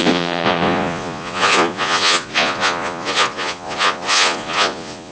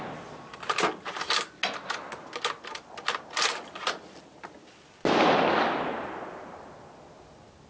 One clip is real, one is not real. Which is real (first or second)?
second